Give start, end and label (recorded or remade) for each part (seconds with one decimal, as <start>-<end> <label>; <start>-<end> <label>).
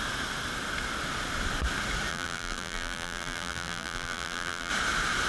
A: 0.0-2.1 recorded; 2.1-4.7 remade; 4.7-5.3 recorded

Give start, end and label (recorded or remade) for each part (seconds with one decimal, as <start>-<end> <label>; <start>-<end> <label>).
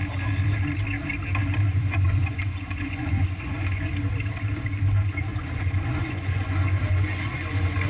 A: 0.0-1.7 recorded; 1.7-3.9 remade; 3.9-5.3 recorded; 5.3-7.9 remade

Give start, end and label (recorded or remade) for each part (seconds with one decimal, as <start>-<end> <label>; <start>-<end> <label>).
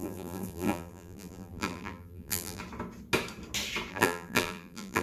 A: 0.0-2.6 remade; 2.6-3.9 recorded; 3.9-5.0 remade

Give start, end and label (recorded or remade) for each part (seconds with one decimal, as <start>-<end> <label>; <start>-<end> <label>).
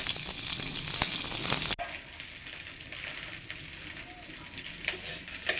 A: 0.0-5.6 recorded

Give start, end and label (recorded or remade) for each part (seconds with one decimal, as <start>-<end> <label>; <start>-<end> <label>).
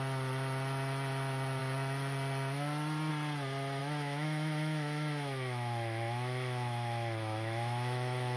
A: 0.0-3.8 recorded; 3.8-8.4 remade